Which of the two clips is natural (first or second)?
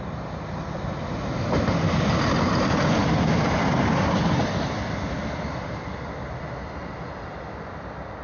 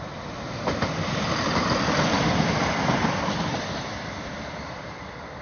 first